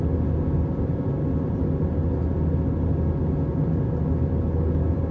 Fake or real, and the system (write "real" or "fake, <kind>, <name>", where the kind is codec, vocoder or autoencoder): real